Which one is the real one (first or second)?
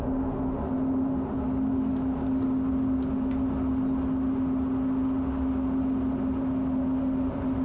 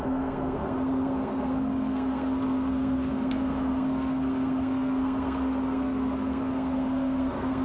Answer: first